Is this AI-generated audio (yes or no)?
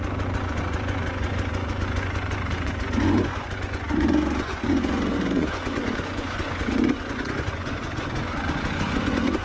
yes